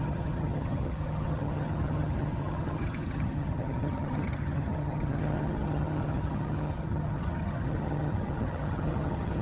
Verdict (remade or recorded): remade